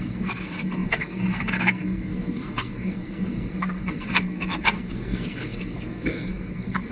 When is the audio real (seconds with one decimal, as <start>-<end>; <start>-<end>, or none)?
none